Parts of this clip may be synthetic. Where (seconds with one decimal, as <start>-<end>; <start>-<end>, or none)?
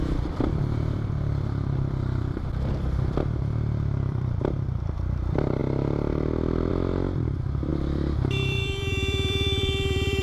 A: 0.0-5.6; 6.7-10.2